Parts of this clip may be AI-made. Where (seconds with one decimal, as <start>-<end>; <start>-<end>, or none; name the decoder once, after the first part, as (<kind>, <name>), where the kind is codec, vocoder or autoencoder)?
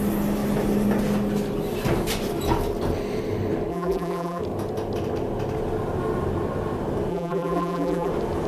3.7-4.4 (vocoder, BigVGAN v2); 7.1-8.1